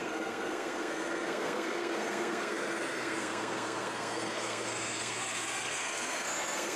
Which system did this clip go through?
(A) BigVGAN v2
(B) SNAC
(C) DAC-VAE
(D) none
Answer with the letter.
B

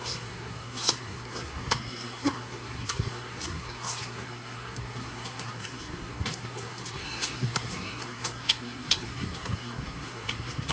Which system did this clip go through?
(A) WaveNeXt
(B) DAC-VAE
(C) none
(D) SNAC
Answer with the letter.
D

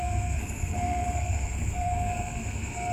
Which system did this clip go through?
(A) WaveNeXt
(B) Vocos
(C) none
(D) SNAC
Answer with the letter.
D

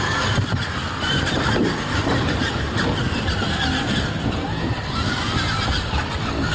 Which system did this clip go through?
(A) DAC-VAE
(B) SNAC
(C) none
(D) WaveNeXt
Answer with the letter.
C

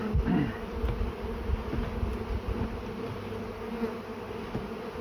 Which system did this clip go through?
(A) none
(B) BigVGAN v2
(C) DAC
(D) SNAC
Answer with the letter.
A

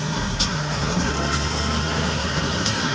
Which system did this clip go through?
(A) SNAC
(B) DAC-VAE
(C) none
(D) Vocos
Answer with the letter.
A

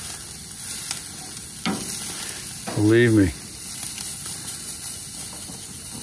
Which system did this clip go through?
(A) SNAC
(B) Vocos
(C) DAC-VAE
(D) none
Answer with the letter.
D